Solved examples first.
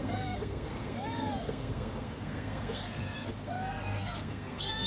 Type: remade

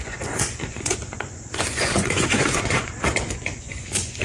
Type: remade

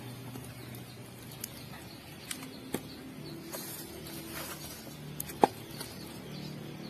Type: recorded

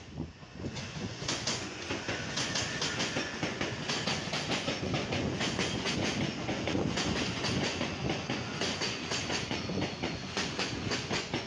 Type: remade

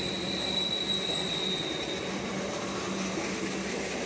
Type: recorded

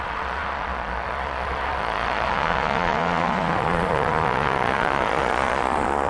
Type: remade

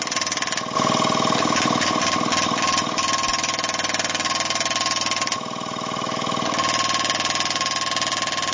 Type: recorded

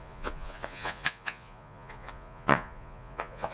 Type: remade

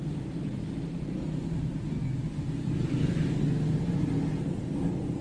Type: recorded